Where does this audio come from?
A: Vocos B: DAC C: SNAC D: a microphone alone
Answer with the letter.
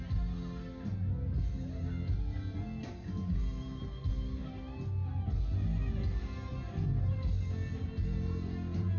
D